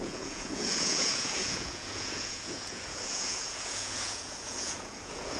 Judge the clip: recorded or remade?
remade